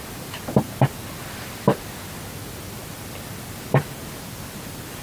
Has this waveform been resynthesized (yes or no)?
no